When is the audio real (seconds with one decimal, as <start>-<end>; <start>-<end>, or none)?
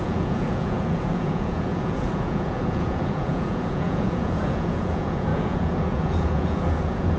none